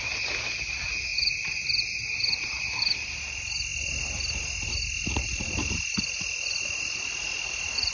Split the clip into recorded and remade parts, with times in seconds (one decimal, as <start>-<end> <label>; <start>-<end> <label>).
0.0-7.9 recorded